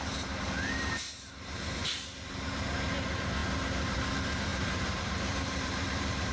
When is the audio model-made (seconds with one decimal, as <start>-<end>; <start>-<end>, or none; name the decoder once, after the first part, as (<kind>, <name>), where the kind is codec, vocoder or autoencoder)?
4.5-6.3 (vocoder, BigVGAN v2)